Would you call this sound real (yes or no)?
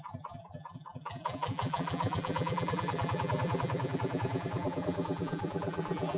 no